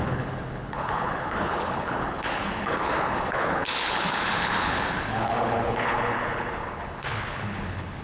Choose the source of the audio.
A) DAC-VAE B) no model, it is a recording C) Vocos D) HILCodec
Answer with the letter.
D